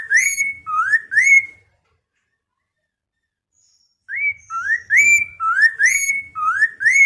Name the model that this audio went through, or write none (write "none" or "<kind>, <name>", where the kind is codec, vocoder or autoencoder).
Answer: none